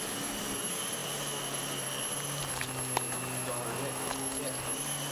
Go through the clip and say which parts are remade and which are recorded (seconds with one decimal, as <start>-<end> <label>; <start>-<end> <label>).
0.0-5.1 recorded